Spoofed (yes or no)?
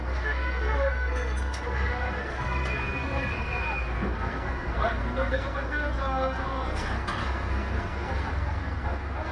yes